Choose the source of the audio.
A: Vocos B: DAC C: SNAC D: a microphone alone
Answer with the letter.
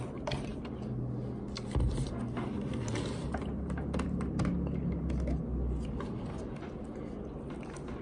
D